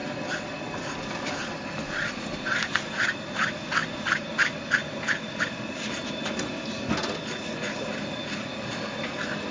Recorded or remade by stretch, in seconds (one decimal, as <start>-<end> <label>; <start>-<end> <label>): 0.0-9.5 recorded